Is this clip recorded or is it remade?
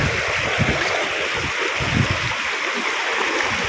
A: recorded